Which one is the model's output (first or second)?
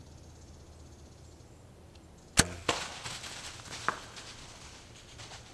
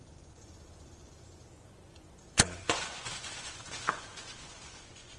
second